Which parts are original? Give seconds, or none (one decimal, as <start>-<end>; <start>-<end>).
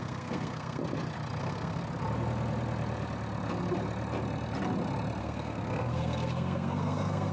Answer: 0.8-1.4; 1.8-5.2